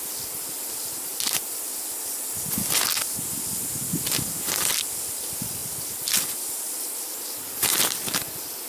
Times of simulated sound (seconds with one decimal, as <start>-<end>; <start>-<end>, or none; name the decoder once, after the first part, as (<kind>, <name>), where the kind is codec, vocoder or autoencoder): 1.1-2.8 (vocoder, BigVGAN v2); 5.6-6.6